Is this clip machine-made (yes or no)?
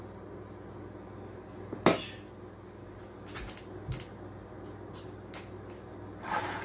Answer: no